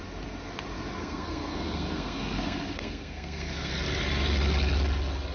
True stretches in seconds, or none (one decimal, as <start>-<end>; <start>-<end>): 0.0-1.0; 3.7-5.3